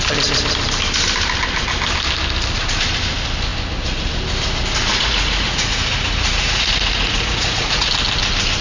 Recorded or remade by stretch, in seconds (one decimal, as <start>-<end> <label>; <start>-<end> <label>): 0.0-4.9 recorded; 4.9-7.9 remade; 7.9-8.6 recorded